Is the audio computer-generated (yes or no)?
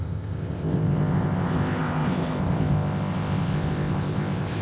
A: yes